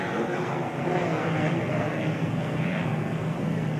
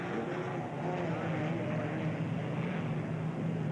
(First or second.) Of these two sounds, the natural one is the second